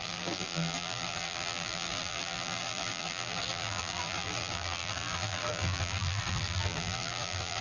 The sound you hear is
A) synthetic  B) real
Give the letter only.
A